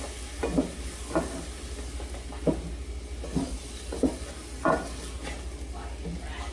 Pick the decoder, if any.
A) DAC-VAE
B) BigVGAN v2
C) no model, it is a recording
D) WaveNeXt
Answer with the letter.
C